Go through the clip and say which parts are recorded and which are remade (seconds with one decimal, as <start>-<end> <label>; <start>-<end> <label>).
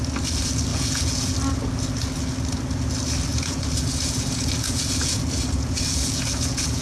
0.0-0.7 recorded; 0.7-1.3 remade; 1.3-3.3 recorded; 3.3-6.8 remade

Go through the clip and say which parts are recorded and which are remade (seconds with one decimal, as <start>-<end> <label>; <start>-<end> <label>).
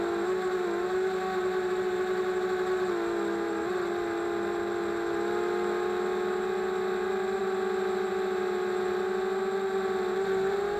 0.0-10.8 recorded